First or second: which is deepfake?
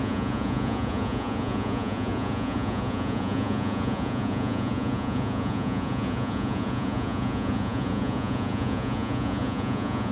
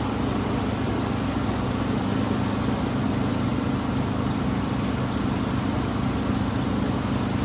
first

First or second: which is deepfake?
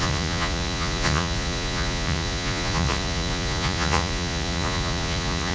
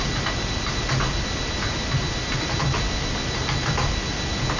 first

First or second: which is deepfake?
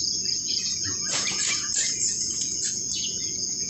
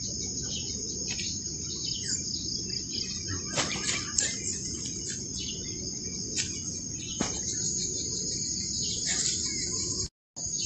first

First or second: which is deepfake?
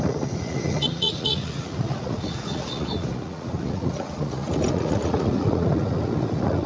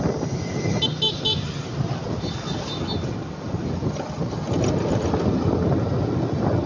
first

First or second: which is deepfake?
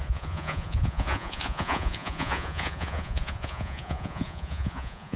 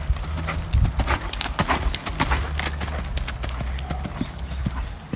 first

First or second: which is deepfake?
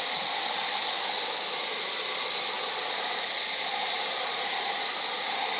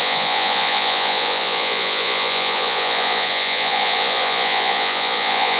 second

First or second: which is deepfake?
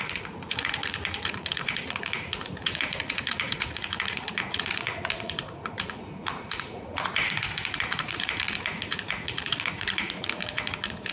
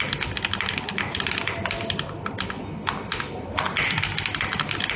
first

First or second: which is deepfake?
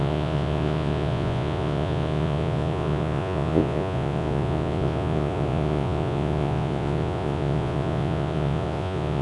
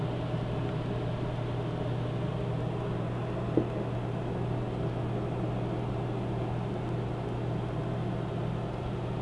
first